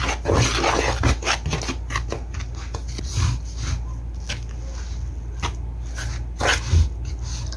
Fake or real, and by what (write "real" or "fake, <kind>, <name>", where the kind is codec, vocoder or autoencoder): real